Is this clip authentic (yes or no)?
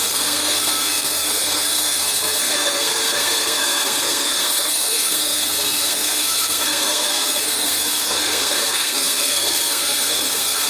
no